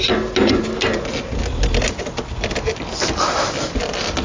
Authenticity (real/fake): real